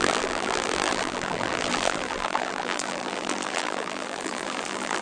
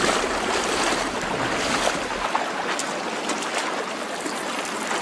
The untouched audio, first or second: second